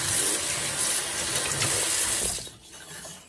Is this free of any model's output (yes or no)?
yes